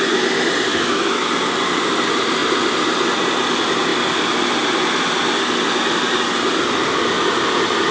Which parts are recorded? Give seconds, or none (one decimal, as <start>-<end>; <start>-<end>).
0.0-0.7; 1.3-7.9